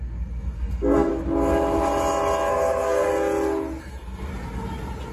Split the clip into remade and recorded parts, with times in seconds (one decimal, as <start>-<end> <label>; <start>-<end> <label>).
0.0-1.1 remade; 1.1-2.5 recorded; 2.5-3.1 remade; 3.1-3.8 recorded; 3.8-4.3 remade; 4.3-5.1 recorded